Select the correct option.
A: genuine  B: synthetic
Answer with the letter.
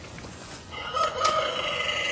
B